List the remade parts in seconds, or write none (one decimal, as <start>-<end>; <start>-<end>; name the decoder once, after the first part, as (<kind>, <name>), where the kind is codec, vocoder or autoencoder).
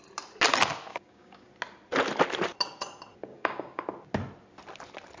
0.9-1.5 (codec, DAC); 3.3-3.8